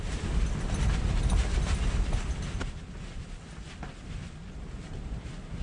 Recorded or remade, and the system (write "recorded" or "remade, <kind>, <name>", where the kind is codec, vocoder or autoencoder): recorded